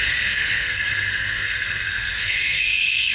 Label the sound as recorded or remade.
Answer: remade